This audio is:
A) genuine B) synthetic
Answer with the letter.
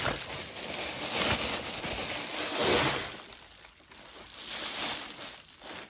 A